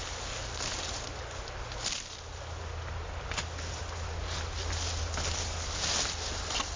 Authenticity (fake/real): real